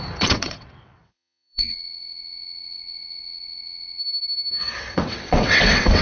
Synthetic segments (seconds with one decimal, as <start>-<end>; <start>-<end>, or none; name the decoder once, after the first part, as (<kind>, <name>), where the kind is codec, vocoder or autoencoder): 0.0-4.0 (vocoder, WaveNeXt); 4.6-6.0